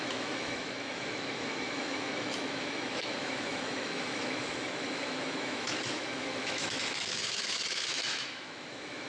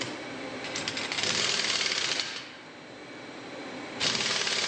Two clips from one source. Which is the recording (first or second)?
second